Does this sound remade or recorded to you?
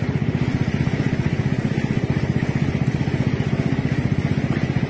recorded